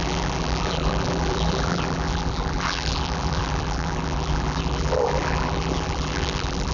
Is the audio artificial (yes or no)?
yes